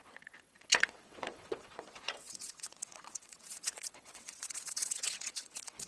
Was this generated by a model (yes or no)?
yes